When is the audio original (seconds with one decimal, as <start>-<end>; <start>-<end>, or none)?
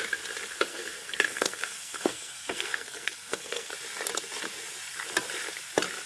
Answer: 0.0-0.7; 3.7-6.1